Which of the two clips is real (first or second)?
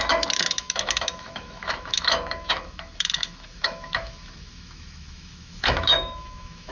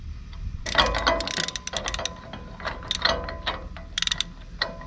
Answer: second